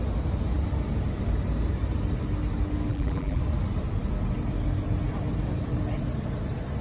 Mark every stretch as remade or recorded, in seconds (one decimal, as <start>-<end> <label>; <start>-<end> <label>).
0.0-2.9 recorded; 2.9-3.4 remade; 3.4-6.8 recorded